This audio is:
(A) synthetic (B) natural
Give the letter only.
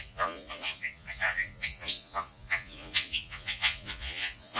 A